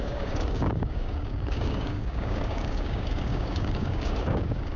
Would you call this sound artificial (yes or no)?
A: yes